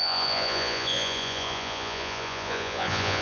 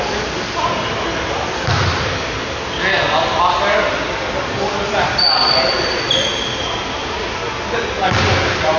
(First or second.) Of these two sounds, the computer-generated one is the first